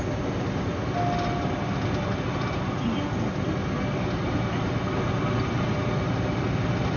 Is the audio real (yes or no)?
yes